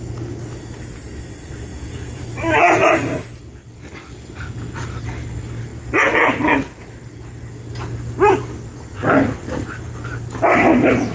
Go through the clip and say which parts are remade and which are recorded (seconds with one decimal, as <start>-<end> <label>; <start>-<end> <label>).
0.0-1.7 recorded; 1.7-2.2 remade; 2.2-11.1 recorded